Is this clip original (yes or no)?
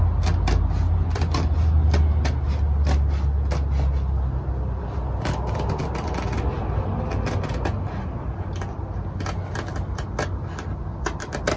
yes